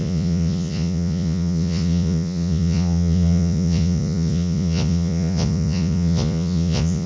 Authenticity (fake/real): fake